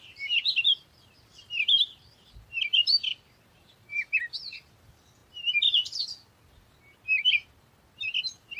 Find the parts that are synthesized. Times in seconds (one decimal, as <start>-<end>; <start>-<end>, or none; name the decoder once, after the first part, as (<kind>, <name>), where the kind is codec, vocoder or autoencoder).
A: 0.0-5.2 (vocoder, BigVGAN v2); 7.6-8.6